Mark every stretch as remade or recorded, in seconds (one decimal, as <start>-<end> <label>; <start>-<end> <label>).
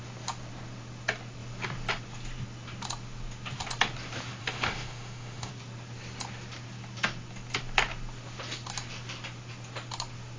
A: 0.0-4.4 recorded; 4.4-5.5 remade; 5.5-10.4 recorded